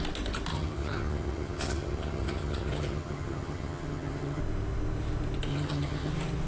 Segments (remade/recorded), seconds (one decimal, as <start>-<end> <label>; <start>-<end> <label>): 0.0-0.5 recorded; 0.5-4.4 remade; 4.4-5.5 recorded; 5.5-6.1 remade; 6.1-6.5 recorded